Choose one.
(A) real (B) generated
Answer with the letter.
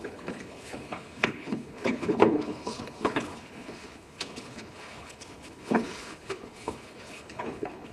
B